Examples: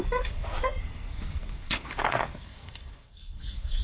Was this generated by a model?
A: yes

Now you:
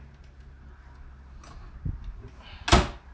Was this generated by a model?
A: no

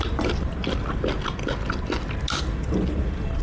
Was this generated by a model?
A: no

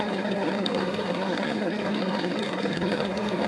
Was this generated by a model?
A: yes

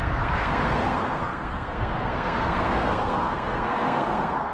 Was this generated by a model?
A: yes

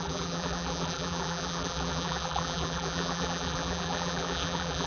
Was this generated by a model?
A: yes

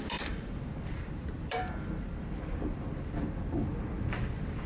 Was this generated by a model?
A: yes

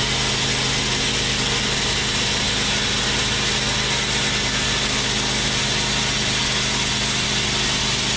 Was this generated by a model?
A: no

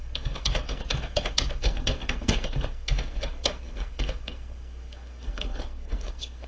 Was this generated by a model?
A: yes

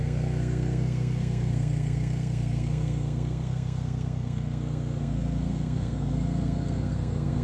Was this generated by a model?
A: yes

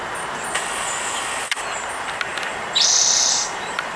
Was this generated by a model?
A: no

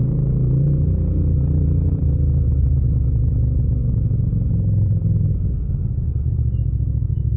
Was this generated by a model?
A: yes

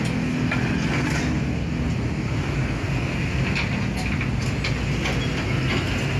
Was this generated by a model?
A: no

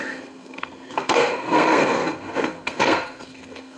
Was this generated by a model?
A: yes